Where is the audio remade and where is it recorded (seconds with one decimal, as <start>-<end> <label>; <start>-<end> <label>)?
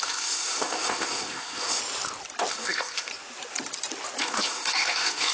0.0-1.8 remade; 1.8-2.5 recorded; 2.5-3.1 remade; 3.1-4.2 recorded; 4.2-5.3 remade